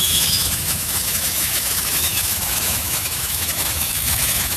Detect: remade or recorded remade